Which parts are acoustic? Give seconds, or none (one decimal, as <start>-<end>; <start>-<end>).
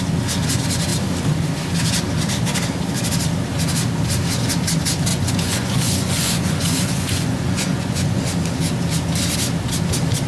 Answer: 0.0-5.1; 8.2-10.3